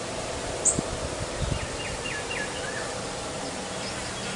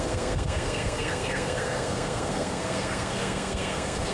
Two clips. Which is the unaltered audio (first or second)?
first